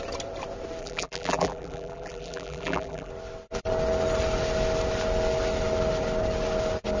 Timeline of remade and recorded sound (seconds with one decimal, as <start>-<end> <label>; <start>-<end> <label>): 0.0-0.8 recorded; 0.8-3.1 remade; 3.1-7.0 recorded